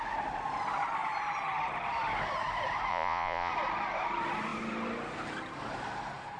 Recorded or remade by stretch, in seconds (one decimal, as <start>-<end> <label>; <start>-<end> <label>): 0.0-2.9 recorded; 2.9-3.5 remade; 3.5-6.4 recorded

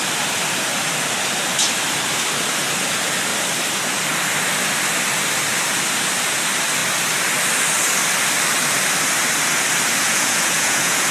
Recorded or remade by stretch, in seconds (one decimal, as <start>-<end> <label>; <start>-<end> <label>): 0.0-10.0 recorded; 10.0-11.1 remade

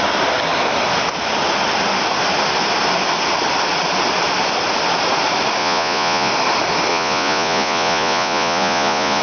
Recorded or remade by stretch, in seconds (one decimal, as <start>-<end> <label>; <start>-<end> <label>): 0.0-5.6 recorded; 5.6-6.3 remade; 6.3-6.9 recorded; 6.9-9.2 remade

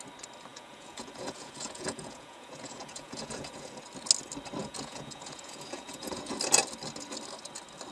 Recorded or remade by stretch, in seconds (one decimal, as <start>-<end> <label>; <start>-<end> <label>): 0.0-0.5 recorded; 0.5-3.8 remade; 3.8-4.6 recorded; 4.6-6.4 remade; 6.4-7.9 recorded

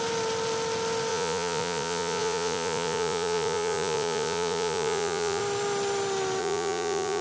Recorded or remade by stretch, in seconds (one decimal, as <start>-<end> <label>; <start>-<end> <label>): 0.0-1.1 recorded; 1.1-5.4 remade; 5.4-6.4 recorded; 6.4-7.2 remade

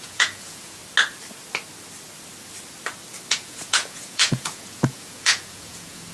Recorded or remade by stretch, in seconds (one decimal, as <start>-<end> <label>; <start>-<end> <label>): 0.0-0.8 remade; 0.8-3.3 recorded; 3.3-6.1 remade

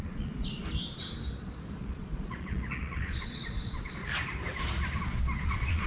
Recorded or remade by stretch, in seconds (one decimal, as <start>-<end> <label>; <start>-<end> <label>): 0.0-0.6 remade; 0.6-1.8 recorded; 1.8-4.0 remade; 4.0-5.0 recorded; 5.0-5.9 remade